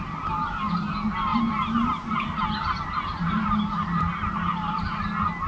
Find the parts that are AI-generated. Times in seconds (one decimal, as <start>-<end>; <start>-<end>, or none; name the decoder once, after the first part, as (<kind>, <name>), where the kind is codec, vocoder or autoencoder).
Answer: none